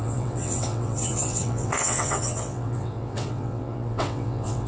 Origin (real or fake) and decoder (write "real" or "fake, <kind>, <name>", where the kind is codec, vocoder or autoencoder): fake, vocoder, WaveNeXt